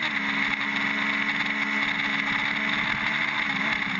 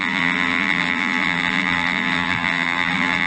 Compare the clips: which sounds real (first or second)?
first